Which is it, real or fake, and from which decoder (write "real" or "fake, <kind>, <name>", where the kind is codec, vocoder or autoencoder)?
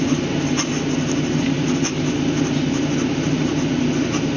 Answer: real